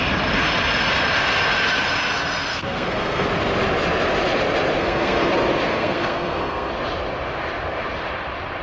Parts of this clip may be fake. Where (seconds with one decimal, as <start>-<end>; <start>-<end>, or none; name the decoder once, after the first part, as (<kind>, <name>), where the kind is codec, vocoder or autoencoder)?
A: 2.5-3.3 (codec, SNAC); 4.8-5.3; 5.7-6.7

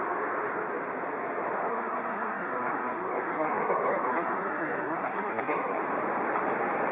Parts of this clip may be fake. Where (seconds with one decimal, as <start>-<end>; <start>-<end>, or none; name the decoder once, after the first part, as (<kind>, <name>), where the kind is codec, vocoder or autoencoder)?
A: 1.7-5.8 (codec, SNAC)

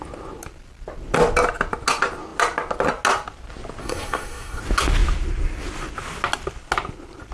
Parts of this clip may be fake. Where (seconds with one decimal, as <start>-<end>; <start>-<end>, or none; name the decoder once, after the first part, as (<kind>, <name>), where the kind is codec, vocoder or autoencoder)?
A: 3.8-4.6 (codec, SNAC)

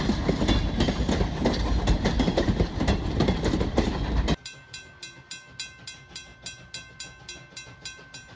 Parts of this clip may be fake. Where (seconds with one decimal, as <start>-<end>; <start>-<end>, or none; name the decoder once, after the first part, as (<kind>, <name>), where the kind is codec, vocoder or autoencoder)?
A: none

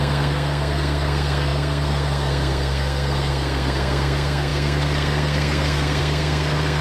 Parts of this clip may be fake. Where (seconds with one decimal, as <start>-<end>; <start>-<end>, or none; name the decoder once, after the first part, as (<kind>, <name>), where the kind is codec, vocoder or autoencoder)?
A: 0.0-6.8 (codec, SNAC)

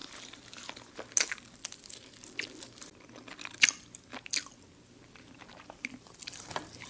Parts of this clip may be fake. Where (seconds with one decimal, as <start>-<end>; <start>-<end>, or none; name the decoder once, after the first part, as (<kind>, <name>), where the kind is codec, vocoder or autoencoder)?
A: none

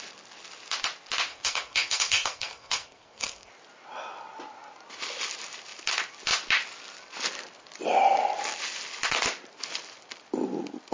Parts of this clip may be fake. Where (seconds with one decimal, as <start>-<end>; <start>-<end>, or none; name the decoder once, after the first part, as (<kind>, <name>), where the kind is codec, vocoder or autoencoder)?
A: 1.3-3.5 (codec, SNAC)